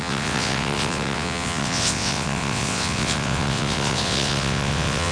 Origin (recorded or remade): remade